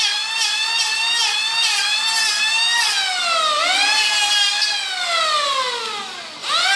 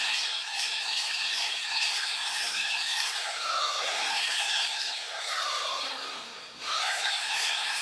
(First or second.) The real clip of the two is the first